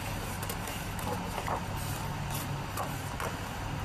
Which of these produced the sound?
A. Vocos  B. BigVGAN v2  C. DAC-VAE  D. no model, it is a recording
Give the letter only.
D